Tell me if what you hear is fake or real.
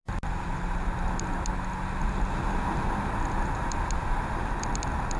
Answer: real